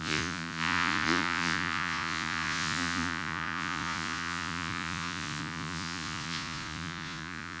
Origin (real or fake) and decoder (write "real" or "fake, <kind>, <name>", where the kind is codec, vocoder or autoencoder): fake, vocoder, Vocos